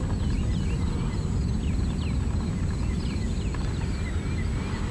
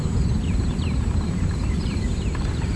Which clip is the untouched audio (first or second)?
first